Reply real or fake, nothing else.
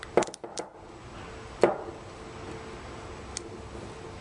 real